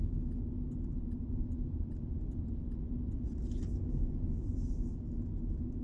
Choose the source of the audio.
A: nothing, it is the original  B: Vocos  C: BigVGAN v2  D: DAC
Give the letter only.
A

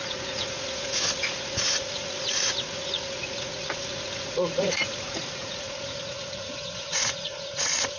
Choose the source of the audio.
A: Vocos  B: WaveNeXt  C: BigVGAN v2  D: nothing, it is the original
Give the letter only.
A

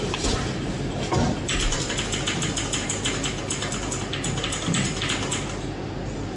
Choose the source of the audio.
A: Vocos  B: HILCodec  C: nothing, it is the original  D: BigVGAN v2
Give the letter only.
C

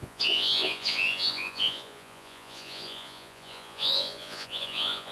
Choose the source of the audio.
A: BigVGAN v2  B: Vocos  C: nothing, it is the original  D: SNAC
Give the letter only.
B